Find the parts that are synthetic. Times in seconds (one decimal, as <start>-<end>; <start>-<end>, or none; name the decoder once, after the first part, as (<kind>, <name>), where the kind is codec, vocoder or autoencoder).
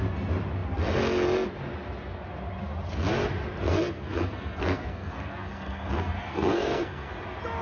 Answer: 3.7-7.1 (codec, SNAC)